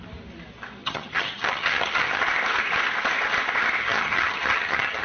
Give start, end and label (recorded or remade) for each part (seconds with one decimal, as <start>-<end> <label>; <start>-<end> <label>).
0.0-0.8 recorded; 0.8-2.2 remade; 2.2-3.8 recorded; 3.8-5.0 remade